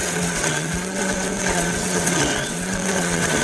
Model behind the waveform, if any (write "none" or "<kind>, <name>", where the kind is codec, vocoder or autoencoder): vocoder, WaveNeXt